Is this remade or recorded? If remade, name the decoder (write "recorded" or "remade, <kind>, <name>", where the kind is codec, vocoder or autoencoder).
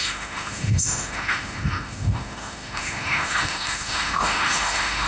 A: remade, autoencoder, DAC-VAE